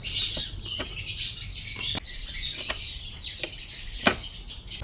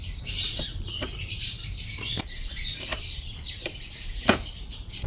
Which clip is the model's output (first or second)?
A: second